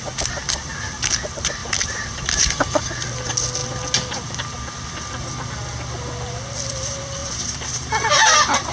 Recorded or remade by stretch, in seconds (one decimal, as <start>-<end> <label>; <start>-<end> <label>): 0.0-1.6 recorded; 1.6-2.6 remade; 2.6-7.2 recorded; 7.2-7.9 remade; 7.9-8.7 recorded